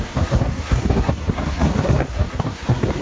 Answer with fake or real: fake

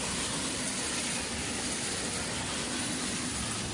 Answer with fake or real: real